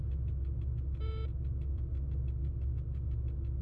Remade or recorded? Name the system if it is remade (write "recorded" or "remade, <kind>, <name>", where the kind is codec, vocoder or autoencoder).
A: recorded